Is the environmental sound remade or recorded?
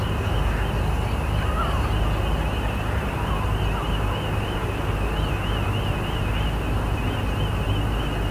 recorded